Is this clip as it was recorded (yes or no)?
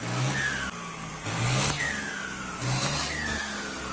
yes